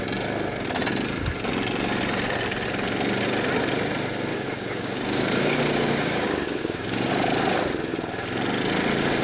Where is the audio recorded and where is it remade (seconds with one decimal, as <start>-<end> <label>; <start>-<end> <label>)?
0.0-4.3 recorded; 4.3-7.1 remade; 7.1-9.2 recorded